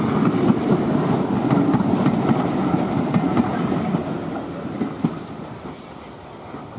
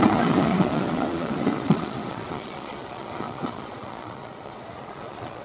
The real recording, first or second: first